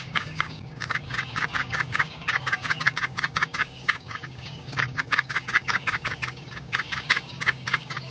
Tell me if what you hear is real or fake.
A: fake